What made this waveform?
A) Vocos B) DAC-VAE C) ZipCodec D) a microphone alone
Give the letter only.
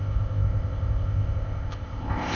C